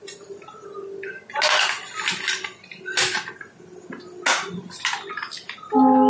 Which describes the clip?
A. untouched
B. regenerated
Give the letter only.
A